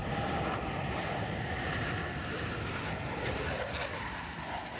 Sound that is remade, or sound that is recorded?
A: recorded